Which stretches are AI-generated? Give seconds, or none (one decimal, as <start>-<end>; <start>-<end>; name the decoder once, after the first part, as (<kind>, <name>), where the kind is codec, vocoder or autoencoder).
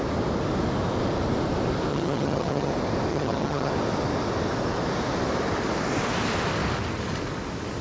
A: 1.9-2.7 (vocoder, HiFi-GAN); 3.1-3.7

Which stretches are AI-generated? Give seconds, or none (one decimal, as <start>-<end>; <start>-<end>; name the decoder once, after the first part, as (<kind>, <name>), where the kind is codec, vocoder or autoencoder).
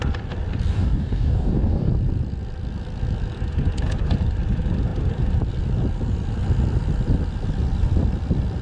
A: 0.7-1.9 (codec, DAC)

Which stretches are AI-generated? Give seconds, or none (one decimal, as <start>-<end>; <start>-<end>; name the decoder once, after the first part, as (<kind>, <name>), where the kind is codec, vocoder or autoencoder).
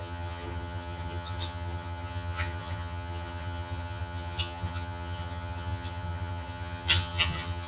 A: 0.0-7.7 (vocoder, HiFi-GAN)